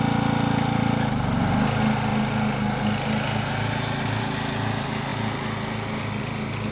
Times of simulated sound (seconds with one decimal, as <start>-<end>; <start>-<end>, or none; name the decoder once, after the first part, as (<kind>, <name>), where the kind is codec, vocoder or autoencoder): none